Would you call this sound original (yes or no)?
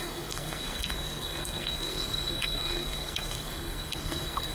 no